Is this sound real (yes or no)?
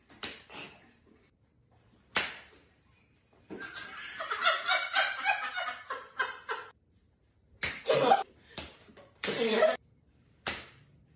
no